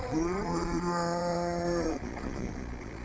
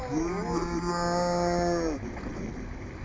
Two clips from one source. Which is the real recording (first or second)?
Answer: second